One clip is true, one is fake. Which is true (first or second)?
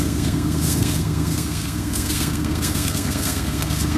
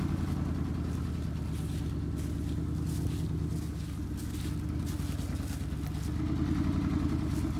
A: second